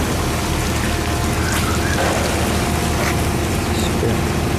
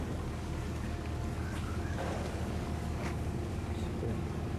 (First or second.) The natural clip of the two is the first